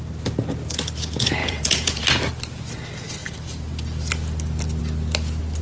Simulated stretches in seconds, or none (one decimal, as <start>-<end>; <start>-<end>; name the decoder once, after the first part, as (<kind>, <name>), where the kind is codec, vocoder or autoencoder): 1.4-2.0 (vocoder, Vocos)